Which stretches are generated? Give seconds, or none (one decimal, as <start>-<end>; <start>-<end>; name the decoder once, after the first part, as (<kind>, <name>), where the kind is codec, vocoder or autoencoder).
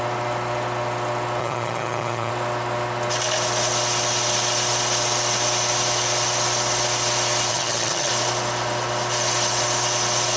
1.4-2.3 (vocoder, HiFi-GAN); 7.5-8.1